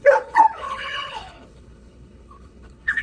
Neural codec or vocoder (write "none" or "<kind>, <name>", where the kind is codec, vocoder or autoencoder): codec, HILCodec